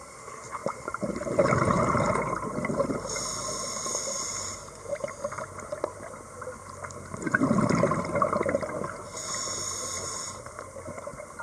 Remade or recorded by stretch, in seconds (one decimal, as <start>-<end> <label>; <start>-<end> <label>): 0.0-0.6 recorded; 0.6-4.7 remade; 4.7-11.4 recorded